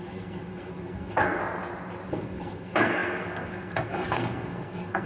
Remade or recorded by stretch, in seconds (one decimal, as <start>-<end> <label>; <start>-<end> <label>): 0.0-1.4 remade; 1.4-2.1 recorded; 2.1-5.1 remade